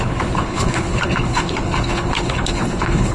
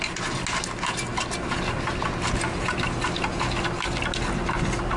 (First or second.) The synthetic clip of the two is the first